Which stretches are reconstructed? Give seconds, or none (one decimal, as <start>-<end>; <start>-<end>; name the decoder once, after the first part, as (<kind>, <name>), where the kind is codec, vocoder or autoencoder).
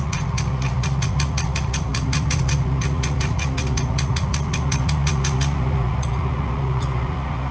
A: 0.0-7.5 (vocoder, Vocos)